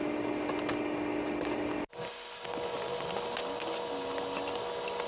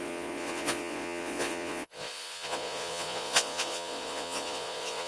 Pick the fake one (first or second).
second